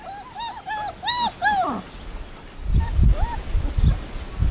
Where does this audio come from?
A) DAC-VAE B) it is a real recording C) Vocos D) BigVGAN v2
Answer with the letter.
B